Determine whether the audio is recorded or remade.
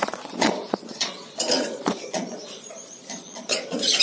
remade